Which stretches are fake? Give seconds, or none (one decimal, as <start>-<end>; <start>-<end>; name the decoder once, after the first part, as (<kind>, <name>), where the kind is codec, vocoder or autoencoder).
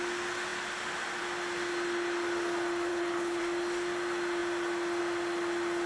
2.9-3.4 (codec, HILCodec)